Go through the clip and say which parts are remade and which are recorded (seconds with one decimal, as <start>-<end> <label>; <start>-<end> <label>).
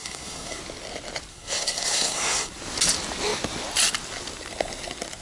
0.0-0.6 remade; 0.6-1.3 recorded; 1.3-2.5 remade; 2.5-5.2 recorded